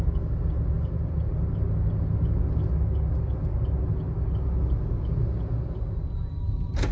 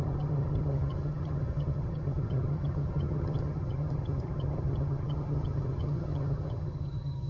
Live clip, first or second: first